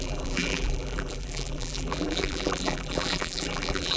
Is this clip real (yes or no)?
no